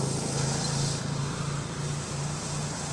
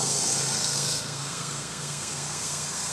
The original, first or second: first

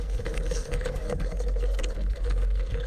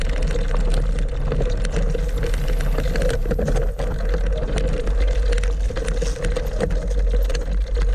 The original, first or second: second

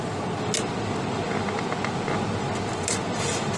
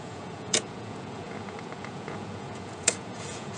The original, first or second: first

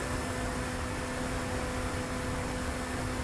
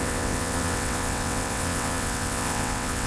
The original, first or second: first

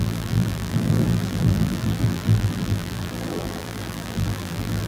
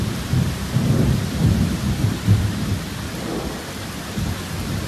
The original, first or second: second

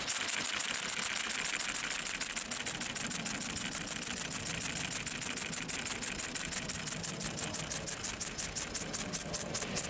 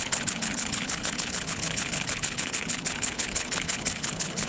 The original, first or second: first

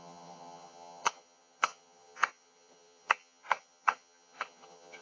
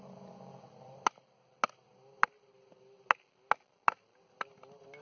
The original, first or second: second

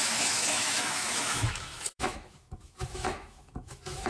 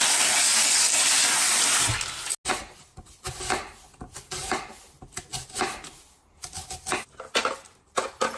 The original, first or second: second